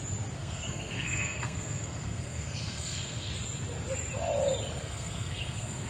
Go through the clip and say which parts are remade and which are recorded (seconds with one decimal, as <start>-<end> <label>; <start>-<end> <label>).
0.0-0.4 recorded; 0.4-3.3 remade; 3.3-4.8 recorded; 4.8-5.9 remade